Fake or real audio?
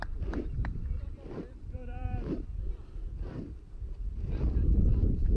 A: fake